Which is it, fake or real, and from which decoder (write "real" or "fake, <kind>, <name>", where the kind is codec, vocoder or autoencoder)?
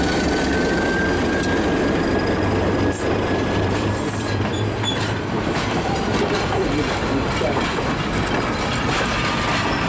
fake, vocoder, BigVGAN v2